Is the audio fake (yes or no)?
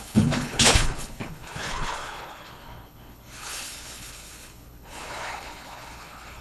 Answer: yes